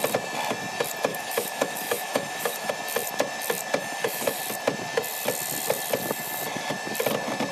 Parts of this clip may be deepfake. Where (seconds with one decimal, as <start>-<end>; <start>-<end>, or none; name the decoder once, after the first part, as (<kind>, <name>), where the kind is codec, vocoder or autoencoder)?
1.1-2.7 (autoencoder, DAC-VAE); 3.8-4.4